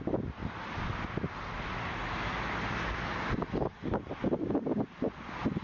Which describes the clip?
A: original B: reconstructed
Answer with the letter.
A